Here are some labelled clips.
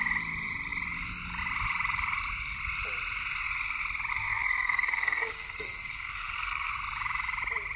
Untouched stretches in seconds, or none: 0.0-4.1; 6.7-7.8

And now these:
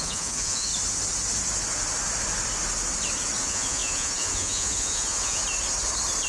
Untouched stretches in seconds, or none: 0.7-3.4; 5.4-6.3

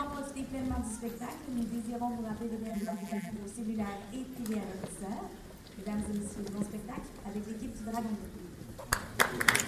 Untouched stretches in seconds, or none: 0.0-2.7; 3.3-9.7